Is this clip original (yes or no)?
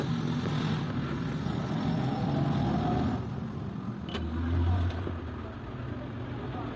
yes